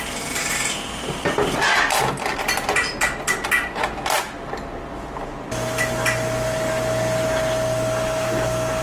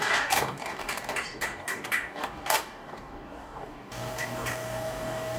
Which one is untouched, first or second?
first